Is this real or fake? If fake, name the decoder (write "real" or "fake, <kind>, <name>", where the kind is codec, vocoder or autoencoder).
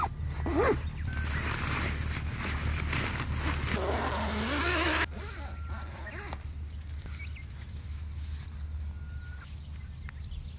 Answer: real